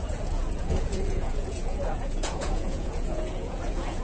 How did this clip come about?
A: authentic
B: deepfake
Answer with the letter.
B